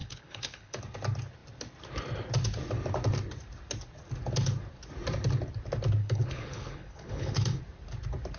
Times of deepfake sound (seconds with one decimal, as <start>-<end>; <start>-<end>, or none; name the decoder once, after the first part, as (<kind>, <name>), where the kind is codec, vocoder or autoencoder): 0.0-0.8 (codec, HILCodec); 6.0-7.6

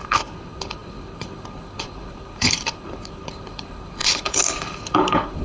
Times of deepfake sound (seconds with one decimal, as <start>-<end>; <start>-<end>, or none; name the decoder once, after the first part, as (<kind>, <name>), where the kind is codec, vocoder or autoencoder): 0.0-5.4 (codec, HILCodec)

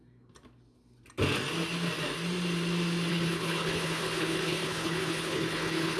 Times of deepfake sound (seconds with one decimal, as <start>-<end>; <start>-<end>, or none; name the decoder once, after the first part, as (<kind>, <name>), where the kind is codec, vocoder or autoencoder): 3.1-6.0 (codec, HILCodec)